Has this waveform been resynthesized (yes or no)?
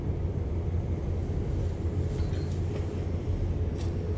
no